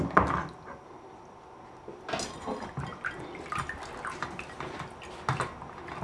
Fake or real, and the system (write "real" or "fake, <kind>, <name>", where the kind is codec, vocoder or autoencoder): real